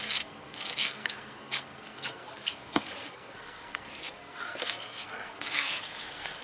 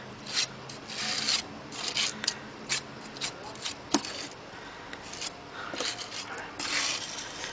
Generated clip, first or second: first